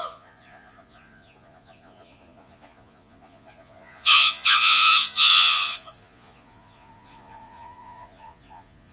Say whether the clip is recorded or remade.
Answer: remade